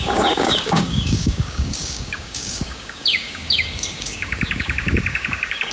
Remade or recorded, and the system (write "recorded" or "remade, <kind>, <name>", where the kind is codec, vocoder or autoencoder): remade, codec, DAC